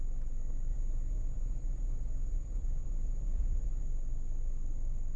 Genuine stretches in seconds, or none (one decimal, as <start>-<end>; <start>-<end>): 0.0-0.7; 3.8-5.2

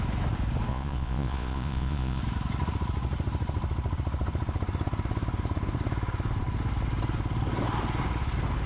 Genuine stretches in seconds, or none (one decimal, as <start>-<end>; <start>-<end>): 0.0-0.7; 2.2-8.7

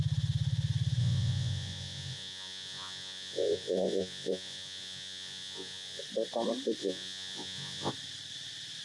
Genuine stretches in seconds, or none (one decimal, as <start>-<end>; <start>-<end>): 0.0-1.0; 6.0-6.8; 7.9-8.8

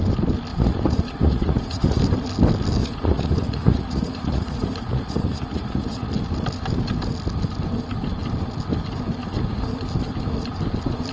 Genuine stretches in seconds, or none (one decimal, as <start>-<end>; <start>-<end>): 0.0-0.5; 2.0-2.8; 6.1-11.1

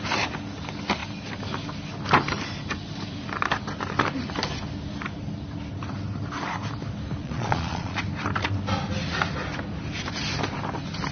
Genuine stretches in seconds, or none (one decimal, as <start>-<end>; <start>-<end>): 0.0-7.2; 8.0-11.1

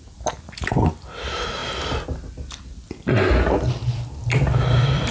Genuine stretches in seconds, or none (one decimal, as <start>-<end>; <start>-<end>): 0.0-5.1